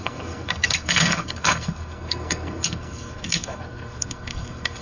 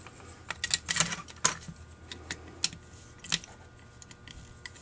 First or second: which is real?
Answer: second